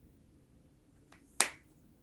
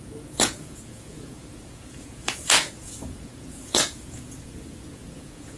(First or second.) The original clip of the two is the first